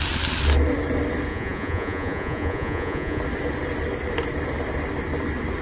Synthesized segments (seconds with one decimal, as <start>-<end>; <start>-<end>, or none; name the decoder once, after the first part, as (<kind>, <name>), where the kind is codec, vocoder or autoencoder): 1.3-3.2 (vocoder, Vocos)